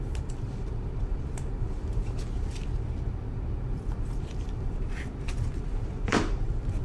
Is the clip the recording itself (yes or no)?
no